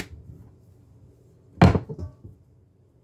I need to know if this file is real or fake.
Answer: real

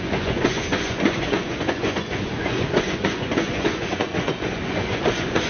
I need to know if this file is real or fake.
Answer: fake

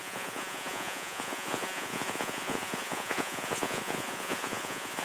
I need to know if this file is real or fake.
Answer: fake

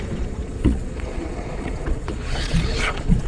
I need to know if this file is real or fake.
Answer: fake